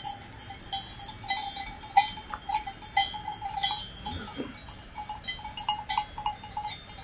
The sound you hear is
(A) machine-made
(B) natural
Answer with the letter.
B